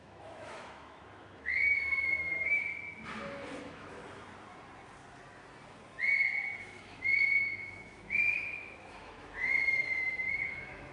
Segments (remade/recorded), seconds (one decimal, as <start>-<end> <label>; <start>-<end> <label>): 0.0-2.7 remade; 2.7-3.6 recorded; 3.6-4.0 remade; 4.0-6.6 recorded; 6.6-10.9 remade